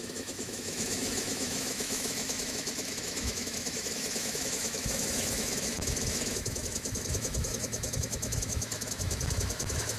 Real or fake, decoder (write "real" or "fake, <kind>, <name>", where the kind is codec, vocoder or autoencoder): fake, autoencoder, DAC-VAE